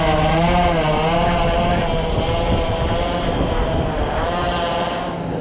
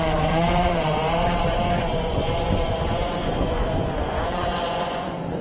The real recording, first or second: first